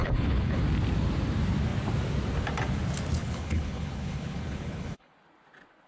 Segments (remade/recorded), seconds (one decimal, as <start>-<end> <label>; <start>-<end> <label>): 0.0-0.6 remade; 0.6-3.2 recorded; 3.2-5.1 remade; 5.1-5.9 recorded